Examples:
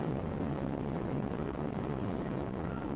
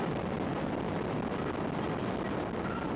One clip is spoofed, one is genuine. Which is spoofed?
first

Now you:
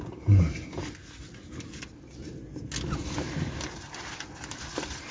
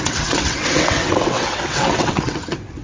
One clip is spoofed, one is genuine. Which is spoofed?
second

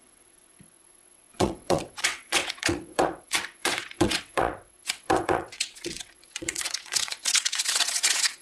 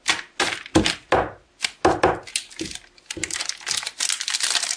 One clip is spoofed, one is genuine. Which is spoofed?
first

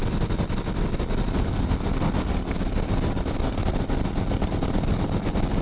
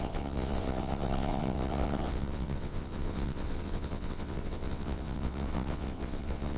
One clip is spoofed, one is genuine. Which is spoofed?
second